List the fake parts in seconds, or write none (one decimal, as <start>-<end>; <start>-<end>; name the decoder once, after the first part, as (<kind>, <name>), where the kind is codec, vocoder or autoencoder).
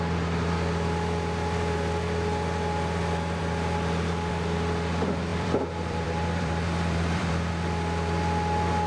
5.3-7.3 (vocoder, BigVGAN v2)